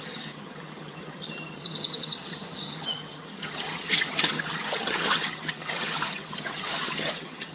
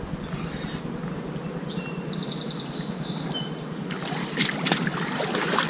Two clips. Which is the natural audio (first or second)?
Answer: second